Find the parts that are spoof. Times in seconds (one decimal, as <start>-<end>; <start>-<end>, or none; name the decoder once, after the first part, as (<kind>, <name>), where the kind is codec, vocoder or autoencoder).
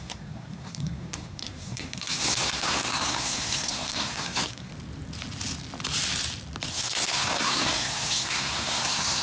0.0-4.7 (codec, SNAC); 6.7-9.2